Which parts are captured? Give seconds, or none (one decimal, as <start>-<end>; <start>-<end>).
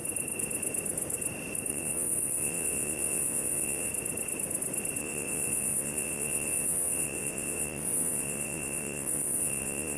0.0-1.7; 3.9-5.0